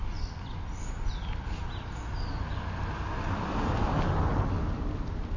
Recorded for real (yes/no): yes